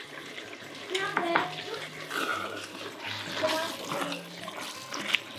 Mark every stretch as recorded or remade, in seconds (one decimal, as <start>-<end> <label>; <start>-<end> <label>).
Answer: 0.0-2.3 recorded; 2.3-2.9 remade; 2.9-5.4 recorded